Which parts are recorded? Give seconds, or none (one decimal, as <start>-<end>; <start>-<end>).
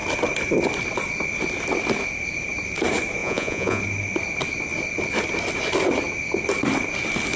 0.0-3.2; 3.8-7.4